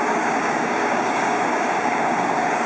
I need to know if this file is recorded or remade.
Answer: remade